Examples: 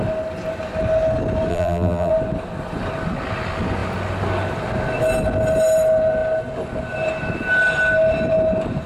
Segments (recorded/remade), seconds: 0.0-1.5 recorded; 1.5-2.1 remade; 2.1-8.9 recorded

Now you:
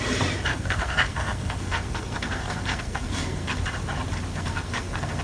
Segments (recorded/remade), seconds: 0.0-0.5 recorded; 0.5-3.6 remade; 3.6-4.3 recorded; 4.3-5.2 remade

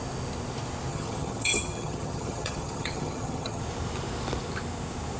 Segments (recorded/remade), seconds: 0.0-0.9 recorded; 0.9-3.6 remade; 3.6-5.2 recorded

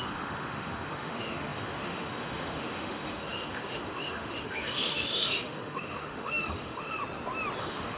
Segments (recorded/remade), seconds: 0.0-7.0 remade; 7.0-7.6 recorded; 7.6-8.0 remade

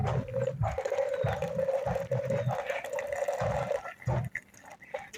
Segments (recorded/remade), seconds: 0.0-5.2 recorded

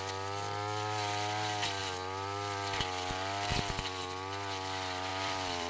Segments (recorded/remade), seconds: 0.0-5.1 recorded; 5.1-5.7 remade

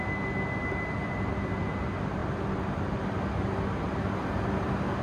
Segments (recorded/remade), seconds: 0.0-1.0 recorded; 1.0-1.7 remade; 1.7-2.2 recorded; 2.2-3.0 remade; 3.0-5.0 recorded